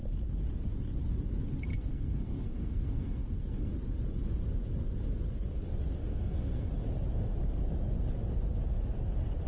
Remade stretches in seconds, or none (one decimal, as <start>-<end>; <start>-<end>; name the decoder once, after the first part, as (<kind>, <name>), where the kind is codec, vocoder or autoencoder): 1.7-3.7 (codec, SNAC); 6.1-6.7